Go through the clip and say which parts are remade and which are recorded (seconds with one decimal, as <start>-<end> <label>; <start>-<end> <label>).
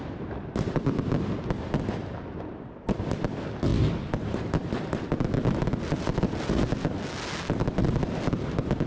0.0-8.9 recorded